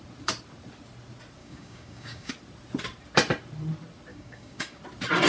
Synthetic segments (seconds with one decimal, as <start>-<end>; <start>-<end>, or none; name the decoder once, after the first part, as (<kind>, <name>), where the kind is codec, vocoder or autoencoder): 1.4-2.3 (codec, DAC); 4.1-4.8